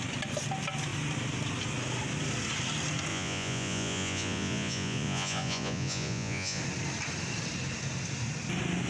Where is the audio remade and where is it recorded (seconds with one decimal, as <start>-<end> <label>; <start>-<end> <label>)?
0.0-3.1 recorded; 3.1-6.6 remade; 6.6-8.9 recorded

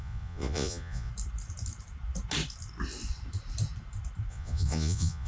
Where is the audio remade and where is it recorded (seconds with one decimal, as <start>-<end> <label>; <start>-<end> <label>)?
0.0-1.1 remade; 1.1-4.3 recorded; 4.3-5.3 remade

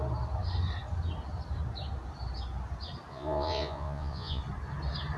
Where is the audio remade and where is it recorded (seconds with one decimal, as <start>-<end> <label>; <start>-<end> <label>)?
0.0-3.1 recorded; 3.1-4.4 remade; 4.4-5.2 recorded

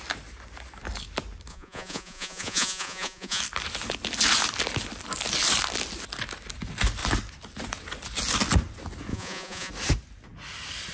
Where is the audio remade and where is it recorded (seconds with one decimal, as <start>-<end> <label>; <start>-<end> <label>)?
0.0-1.5 recorded; 1.5-3.4 remade; 3.4-9.1 recorded; 9.1-9.7 remade; 9.7-10.9 recorded

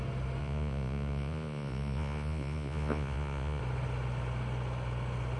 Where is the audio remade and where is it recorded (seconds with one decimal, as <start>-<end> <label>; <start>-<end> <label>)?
0.0-0.4 recorded; 0.4-3.6 remade; 3.6-5.4 recorded

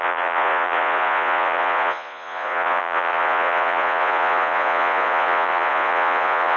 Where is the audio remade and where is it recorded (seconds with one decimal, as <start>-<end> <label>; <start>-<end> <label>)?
0.0-6.6 remade